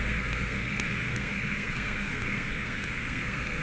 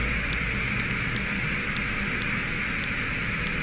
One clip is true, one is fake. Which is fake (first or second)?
first